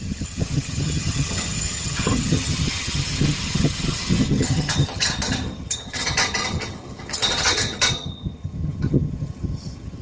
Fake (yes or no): yes